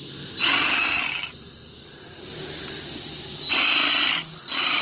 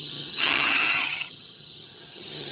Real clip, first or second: first